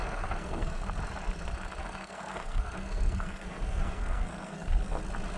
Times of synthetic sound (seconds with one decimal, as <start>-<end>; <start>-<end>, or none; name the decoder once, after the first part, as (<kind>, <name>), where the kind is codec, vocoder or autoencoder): 0.0-0.8 (codec, SNAC); 1.8-5.0